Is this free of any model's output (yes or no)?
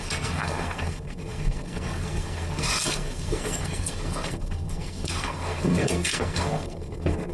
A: no